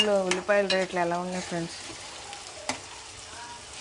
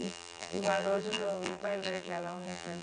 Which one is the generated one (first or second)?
second